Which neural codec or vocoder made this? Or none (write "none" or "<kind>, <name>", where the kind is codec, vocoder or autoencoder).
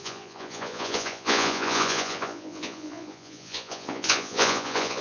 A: vocoder, Vocos